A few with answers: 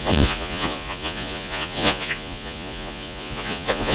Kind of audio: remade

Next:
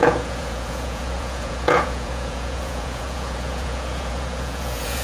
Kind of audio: remade